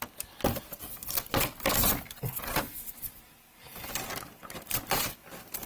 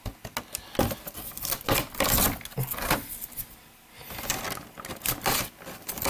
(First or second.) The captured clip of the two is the second